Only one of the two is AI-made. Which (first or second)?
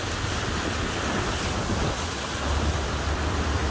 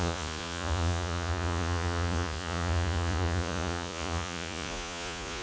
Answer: second